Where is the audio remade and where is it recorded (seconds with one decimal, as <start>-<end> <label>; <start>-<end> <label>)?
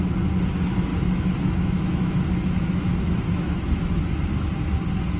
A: 0.0-0.9 recorded; 0.9-4.0 remade; 4.0-5.2 recorded